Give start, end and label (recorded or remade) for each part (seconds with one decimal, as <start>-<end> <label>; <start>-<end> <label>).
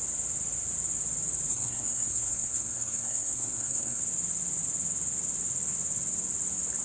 0.0-1.5 recorded; 1.5-4.0 remade; 4.0-6.8 recorded